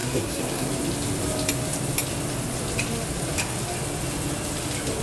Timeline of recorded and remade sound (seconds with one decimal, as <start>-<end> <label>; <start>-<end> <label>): 0.0-0.7 remade; 0.7-5.0 recorded